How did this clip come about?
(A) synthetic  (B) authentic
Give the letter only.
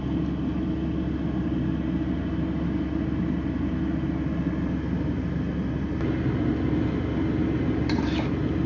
B